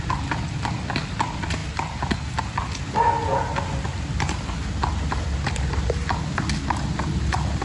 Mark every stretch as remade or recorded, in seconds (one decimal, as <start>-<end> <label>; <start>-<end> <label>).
0.0-7.6 recorded